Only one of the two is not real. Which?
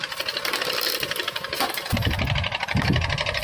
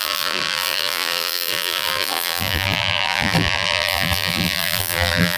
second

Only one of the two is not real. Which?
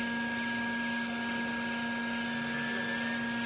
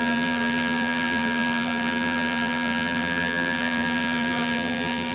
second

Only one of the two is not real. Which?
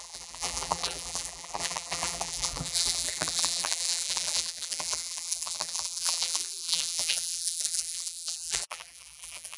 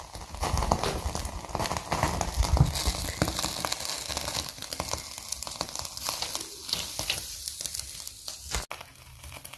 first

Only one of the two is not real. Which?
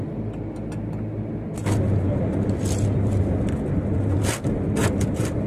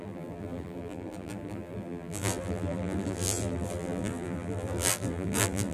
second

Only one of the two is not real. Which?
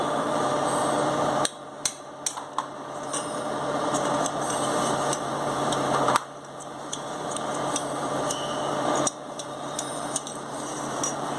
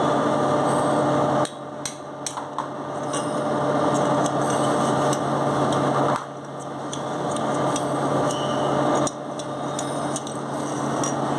first